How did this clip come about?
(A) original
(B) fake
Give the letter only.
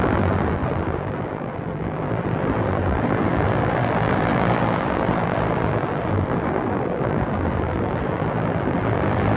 B